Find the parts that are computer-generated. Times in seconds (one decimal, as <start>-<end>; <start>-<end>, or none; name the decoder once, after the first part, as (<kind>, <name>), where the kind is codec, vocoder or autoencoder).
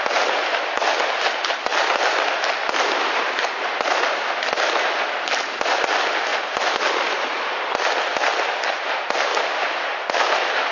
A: none